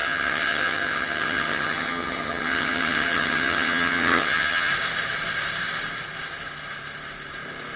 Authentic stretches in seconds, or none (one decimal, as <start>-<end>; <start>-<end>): 4.7-7.8